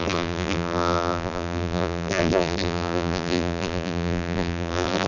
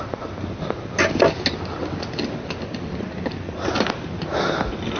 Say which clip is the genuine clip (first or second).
second